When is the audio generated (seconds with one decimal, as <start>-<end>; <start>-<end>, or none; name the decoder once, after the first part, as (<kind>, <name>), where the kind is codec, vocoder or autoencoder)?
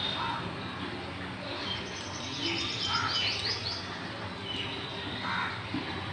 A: none